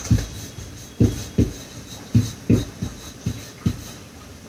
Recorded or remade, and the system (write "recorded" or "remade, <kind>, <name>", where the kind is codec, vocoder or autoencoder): recorded